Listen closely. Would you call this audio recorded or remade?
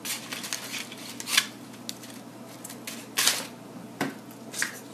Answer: recorded